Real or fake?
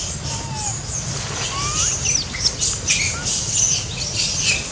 real